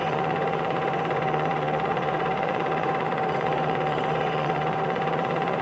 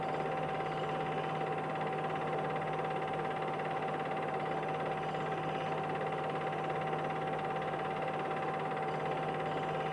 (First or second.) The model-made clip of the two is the first